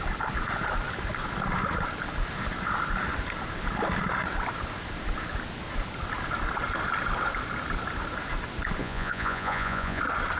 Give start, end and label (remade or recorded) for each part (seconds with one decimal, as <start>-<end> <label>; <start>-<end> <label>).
0.0-8.8 recorded; 8.8-10.0 remade; 10.0-10.4 recorded